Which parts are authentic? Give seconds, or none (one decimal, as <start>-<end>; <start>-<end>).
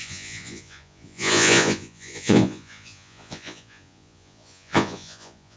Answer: none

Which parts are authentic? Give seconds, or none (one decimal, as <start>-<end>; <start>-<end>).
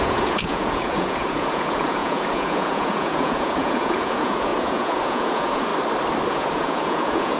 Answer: 5.7-6.3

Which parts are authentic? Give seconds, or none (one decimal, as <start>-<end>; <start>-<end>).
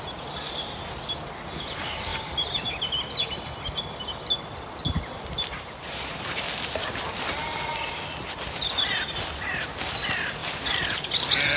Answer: 0.0-11.6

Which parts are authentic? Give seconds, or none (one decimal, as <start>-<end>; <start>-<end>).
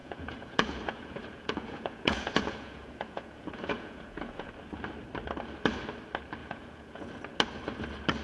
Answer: 4.5-6.4; 7.1-8.2